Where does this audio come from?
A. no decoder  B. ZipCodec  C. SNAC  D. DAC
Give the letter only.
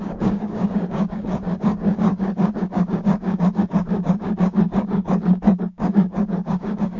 D